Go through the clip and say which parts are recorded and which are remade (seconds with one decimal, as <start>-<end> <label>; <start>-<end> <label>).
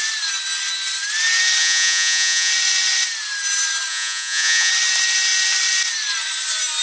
0.0-1.6 recorded; 1.6-2.5 remade; 2.5-3.9 recorded; 3.9-4.7 remade; 4.7-6.8 recorded